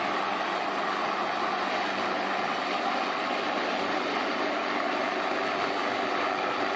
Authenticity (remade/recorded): recorded